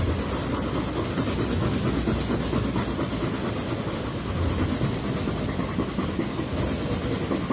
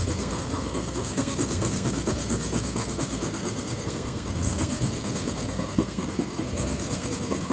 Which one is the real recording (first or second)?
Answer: first